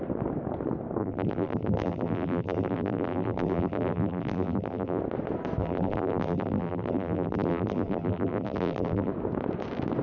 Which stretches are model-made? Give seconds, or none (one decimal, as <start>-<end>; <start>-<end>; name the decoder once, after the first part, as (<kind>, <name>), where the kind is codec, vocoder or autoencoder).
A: 1.0-5.0 (vocoder, BigVGAN v2); 5.6-9.1